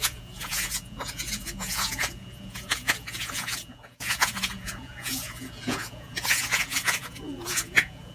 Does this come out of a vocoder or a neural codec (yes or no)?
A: yes